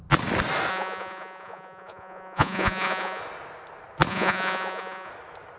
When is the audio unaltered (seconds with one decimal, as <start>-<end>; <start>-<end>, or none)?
0.0-0.7; 3.2-4.1; 5.1-5.6